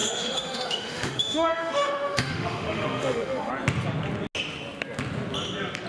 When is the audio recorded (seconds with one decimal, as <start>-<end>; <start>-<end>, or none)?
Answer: 3.5-5.9